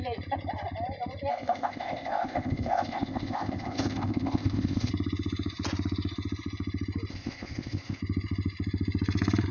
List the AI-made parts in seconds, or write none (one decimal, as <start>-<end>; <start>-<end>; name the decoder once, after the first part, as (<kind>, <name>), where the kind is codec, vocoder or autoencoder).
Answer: 1.3-4.9 (codec, ZipCodec); 7.1-8.0